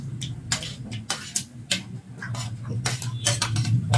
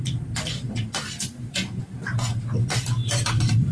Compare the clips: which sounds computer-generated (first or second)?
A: second